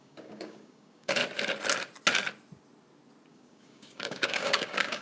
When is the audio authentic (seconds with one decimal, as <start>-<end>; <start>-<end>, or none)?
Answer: 1.2-3.3